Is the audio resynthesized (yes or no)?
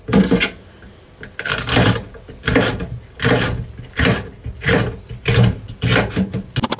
no